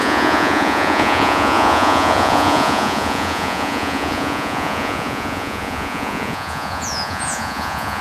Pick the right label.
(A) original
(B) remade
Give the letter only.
B